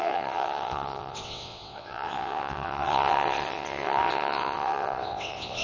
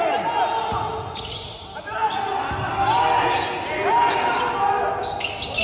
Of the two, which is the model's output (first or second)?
first